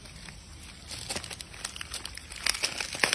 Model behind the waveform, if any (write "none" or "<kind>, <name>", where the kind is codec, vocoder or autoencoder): none